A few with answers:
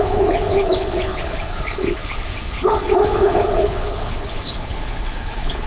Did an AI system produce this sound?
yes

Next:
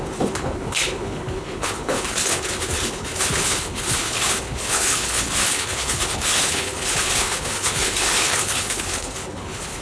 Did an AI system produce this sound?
yes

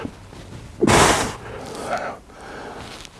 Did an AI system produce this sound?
no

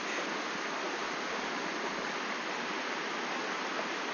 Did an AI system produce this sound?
no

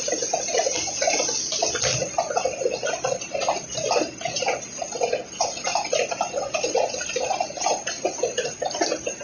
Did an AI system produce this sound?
no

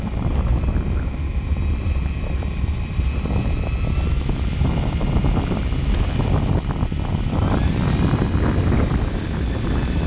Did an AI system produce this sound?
no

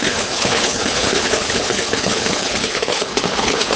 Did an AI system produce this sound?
yes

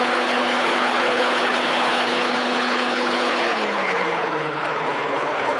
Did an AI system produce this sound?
yes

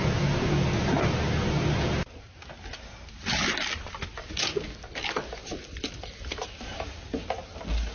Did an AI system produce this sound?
no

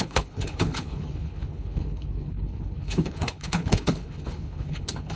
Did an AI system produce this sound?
yes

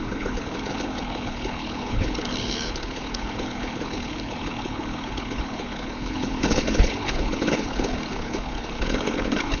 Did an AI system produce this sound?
yes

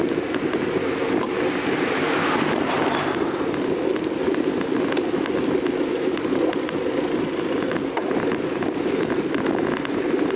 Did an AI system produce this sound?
no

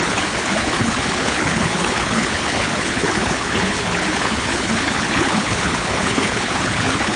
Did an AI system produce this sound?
yes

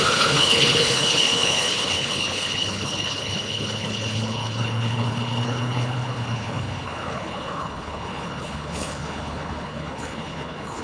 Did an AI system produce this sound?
yes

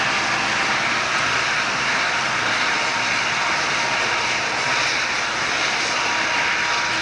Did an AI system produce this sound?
no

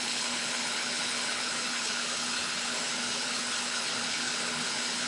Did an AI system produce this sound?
yes